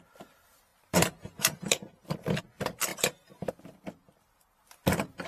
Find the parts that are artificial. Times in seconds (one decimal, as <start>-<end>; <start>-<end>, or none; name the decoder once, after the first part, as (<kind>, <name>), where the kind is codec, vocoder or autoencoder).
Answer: 0.7-2.4 (vocoder, BigVGAN v2); 2.9-3.5